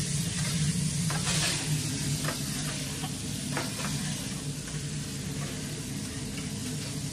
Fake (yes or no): no